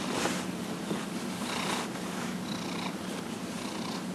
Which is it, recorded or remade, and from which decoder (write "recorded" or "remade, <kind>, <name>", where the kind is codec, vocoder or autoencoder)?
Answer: recorded